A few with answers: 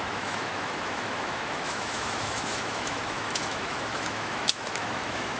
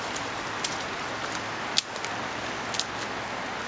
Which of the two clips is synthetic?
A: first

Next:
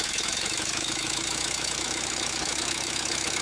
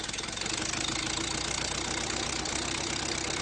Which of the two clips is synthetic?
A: first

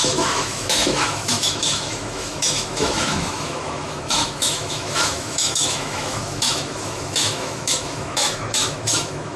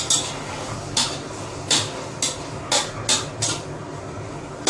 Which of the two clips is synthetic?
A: first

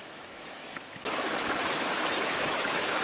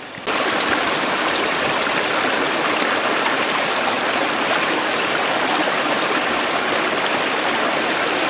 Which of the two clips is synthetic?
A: first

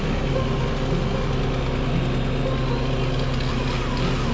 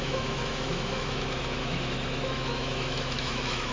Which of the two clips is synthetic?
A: second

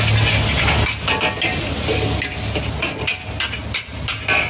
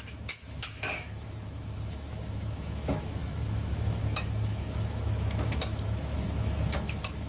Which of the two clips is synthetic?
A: second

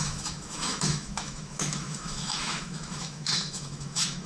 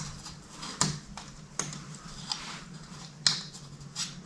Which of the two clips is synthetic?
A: first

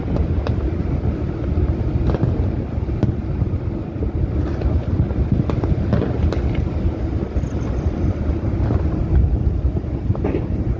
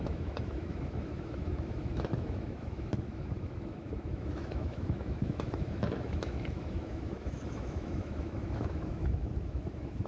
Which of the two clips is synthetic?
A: second